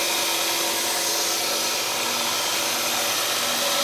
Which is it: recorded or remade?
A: remade